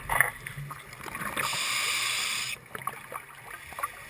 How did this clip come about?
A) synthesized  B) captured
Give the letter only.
B